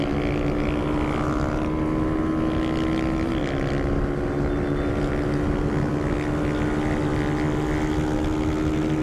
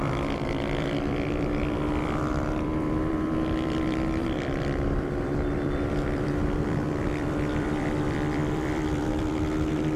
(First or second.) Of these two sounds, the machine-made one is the second